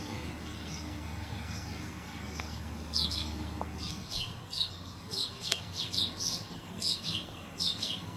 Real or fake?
fake